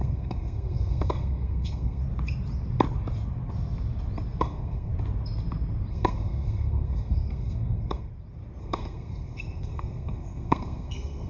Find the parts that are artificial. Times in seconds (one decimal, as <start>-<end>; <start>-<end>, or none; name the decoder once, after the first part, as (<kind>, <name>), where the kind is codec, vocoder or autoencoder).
0.0-2.0 (codec, SNAC); 4.4-4.9; 5.9-8.1; 8.6-11.3